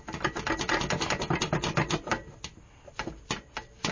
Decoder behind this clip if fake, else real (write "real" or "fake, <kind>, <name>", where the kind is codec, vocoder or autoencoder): real